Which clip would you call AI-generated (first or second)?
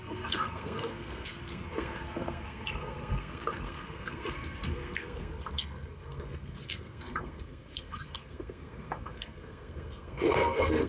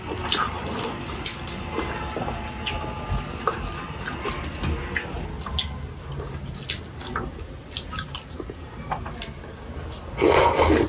first